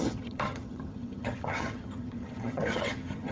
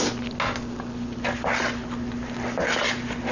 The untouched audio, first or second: second